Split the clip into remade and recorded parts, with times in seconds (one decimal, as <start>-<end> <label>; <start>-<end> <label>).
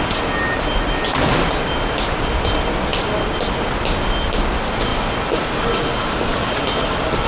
0.0-7.3 recorded